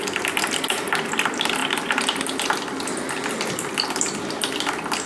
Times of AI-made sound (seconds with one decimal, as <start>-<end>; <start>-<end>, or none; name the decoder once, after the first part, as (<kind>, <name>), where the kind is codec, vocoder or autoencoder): none